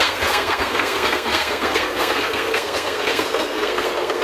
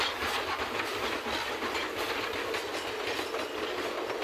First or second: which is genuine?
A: second